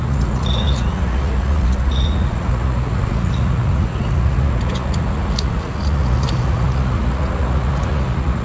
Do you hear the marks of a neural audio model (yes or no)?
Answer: yes